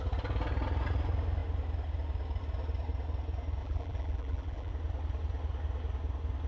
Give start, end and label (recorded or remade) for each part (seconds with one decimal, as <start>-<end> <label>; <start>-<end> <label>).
0.0-3.6 recorded; 3.6-4.7 remade; 4.7-6.5 recorded